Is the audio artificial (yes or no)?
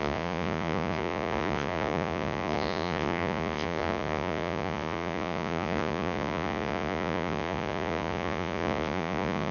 yes